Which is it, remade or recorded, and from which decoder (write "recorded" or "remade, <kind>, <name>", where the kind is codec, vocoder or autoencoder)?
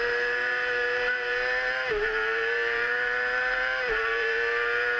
remade, vocoder, BigVGAN v2